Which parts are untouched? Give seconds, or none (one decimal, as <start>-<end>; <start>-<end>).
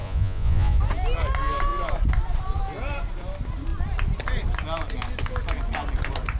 0.8-6.4